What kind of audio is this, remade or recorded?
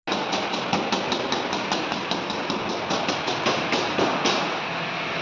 recorded